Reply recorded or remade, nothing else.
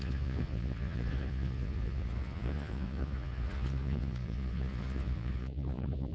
remade